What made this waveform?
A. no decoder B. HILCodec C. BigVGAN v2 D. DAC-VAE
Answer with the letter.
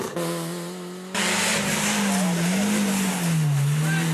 A